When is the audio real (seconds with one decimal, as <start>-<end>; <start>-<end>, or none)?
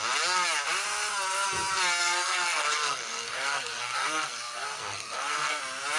0.0-2.0; 5.6-6.0